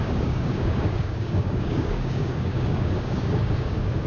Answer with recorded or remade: remade